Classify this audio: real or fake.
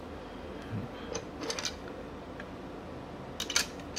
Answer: real